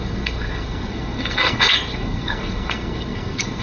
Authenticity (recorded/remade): remade